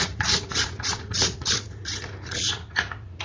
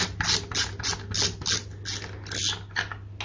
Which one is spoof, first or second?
first